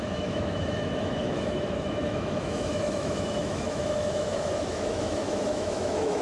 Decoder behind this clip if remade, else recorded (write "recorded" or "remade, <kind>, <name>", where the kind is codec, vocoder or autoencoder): remade, autoencoder, DAC-VAE